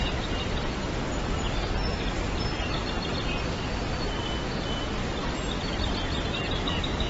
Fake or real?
real